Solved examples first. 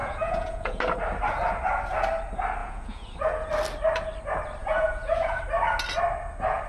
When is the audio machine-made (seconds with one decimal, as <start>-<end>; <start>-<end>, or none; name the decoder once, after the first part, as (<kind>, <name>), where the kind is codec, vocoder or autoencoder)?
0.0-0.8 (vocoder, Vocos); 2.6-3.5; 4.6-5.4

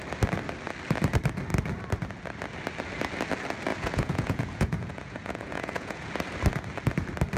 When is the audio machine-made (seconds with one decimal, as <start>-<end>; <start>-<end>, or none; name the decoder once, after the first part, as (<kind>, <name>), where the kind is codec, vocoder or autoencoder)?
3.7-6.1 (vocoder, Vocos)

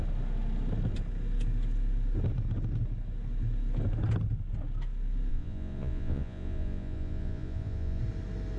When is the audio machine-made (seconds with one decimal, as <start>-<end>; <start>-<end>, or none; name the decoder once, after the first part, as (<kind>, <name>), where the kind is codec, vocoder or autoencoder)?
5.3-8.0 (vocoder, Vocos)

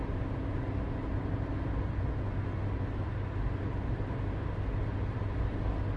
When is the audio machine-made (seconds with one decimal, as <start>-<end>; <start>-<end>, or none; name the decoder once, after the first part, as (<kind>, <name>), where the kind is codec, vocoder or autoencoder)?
none

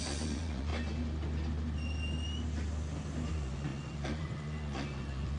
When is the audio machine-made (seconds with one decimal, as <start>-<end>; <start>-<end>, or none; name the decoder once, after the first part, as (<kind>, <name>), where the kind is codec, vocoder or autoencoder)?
0.0-0.7 (vocoder, Vocos); 3.3-5.4

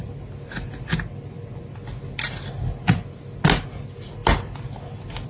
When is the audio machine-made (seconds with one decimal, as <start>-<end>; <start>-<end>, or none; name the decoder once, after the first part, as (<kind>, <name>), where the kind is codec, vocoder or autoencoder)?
none